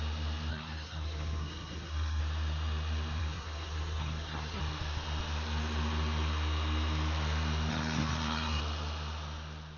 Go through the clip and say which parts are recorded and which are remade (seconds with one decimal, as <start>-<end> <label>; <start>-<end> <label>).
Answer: 0.0-0.5 recorded; 0.5-2.2 remade; 2.2-3.2 recorded; 3.2-4.6 remade; 4.6-7.7 recorded; 7.7-8.6 remade; 8.6-9.8 recorded